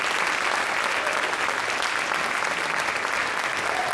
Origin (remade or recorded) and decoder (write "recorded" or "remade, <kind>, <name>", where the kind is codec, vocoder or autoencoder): recorded